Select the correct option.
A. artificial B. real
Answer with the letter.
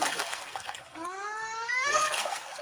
A